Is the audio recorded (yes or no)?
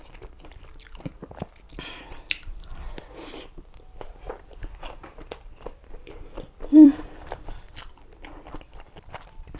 no